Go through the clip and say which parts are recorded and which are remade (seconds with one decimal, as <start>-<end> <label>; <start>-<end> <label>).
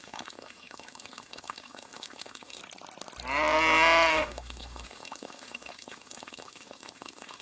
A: 0.0-2.6 remade; 2.6-4.1 recorded; 4.1-7.4 remade